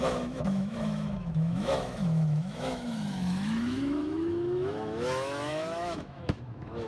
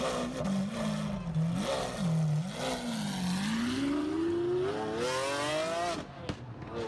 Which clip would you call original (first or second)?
second